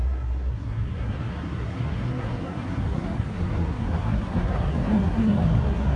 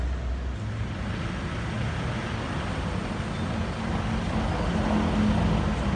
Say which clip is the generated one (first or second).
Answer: first